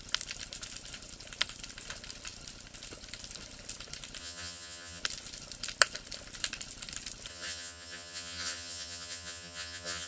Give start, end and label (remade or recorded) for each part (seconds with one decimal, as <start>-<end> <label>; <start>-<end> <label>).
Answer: 0.0-4.2 recorded; 4.2-5.0 remade; 5.0-7.3 recorded; 7.3-10.1 remade